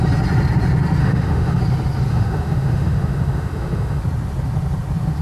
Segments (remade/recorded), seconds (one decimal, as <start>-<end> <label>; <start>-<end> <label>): 0.0-1.0 recorded; 1.0-1.6 remade; 1.6-2.1 recorded; 2.1-4.0 remade; 4.0-5.2 recorded